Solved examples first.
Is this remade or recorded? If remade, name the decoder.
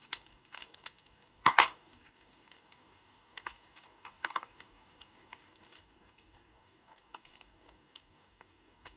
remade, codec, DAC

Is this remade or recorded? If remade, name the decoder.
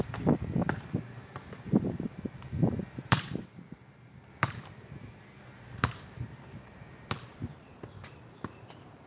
remade, vocoder, BigVGAN v2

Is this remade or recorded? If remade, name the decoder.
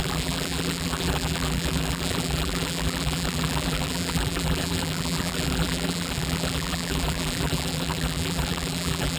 remade, vocoder, BigVGAN v2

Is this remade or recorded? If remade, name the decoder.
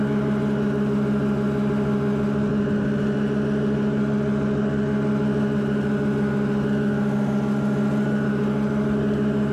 recorded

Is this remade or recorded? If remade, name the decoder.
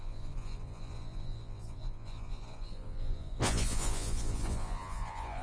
remade, vocoder, Vocos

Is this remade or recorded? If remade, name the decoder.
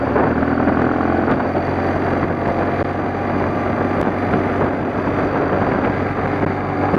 recorded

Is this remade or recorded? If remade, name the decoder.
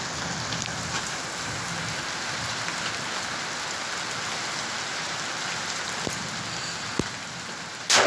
recorded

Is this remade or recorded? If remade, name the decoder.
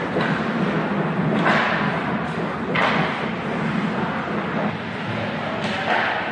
recorded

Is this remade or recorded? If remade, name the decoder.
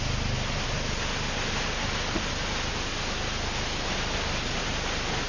recorded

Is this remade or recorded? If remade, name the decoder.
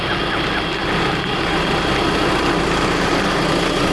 recorded